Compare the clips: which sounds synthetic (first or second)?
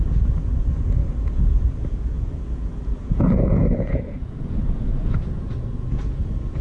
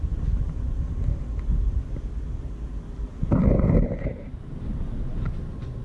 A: first